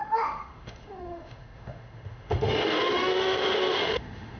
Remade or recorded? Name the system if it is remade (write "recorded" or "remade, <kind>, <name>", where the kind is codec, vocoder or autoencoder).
remade, autoencoder, DAC-VAE